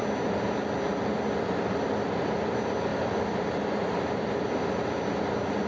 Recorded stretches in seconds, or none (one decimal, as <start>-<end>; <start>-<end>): 0.0-5.7